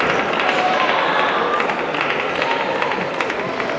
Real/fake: real